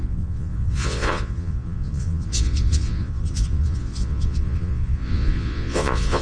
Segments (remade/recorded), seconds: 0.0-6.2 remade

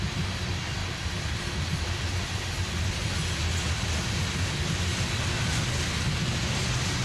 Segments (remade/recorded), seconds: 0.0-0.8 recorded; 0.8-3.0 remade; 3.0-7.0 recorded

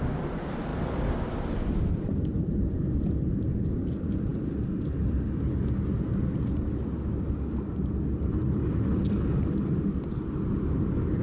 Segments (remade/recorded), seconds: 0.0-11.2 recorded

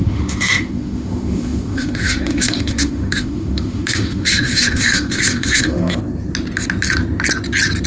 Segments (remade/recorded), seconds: 0.0-6.0 remade; 6.0-7.9 recorded

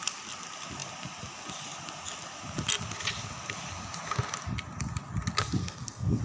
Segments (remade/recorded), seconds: 0.0-5.6 recorded; 5.6-6.2 remade

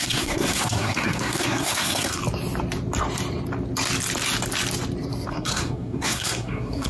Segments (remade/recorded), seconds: 0.0-2.2 remade; 2.2-5.3 recorded; 5.3-6.9 remade